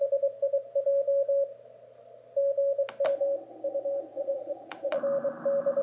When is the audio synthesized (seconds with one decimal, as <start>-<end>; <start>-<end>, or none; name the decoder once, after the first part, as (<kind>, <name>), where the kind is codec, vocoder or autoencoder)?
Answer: 4.1-5.0 (vocoder, Vocos)

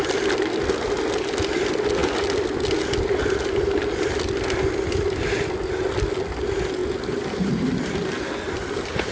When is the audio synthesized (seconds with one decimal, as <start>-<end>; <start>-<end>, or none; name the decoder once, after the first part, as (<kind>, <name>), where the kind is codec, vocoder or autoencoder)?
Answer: none